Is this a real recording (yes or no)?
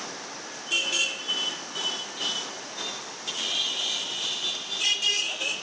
yes